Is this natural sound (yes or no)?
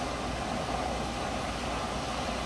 yes